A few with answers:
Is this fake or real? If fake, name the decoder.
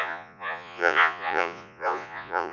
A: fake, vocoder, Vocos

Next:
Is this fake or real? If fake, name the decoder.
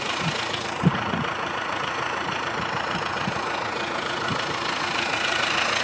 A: fake, vocoder, Vocos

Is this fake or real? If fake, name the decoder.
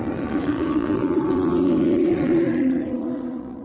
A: fake, vocoder, Vocos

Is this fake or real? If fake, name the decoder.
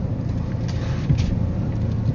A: real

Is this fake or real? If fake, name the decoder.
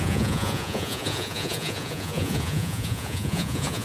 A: fake, vocoder, Vocos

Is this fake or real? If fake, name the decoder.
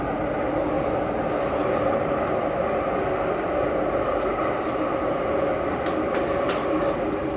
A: real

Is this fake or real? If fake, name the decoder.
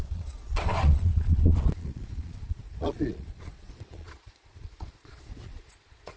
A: fake, vocoder, Vocos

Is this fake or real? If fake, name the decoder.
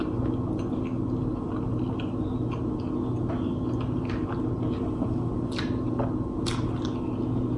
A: real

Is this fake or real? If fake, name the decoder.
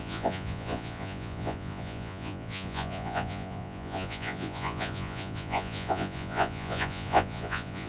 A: fake, vocoder, Vocos